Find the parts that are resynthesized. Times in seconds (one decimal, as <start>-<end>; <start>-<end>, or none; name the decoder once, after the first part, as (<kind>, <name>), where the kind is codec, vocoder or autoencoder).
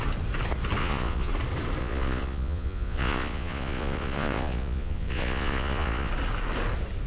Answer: 0.8-1.3 (vocoder, Vocos); 1.8-6.1